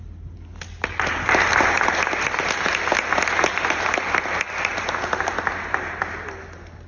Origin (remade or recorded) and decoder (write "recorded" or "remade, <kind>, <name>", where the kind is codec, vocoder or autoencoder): recorded